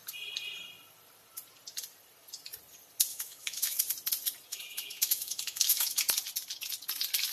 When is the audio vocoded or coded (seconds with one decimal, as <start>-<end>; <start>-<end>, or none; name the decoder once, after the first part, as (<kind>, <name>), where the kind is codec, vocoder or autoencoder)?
3.1-3.8 (autoencoder, DAC-VAE); 4.5-6.0